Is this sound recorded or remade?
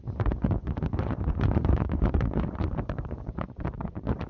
remade